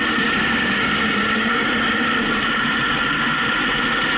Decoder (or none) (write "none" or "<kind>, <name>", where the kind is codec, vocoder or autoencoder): none